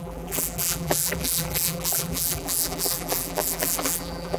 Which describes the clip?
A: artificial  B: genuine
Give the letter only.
A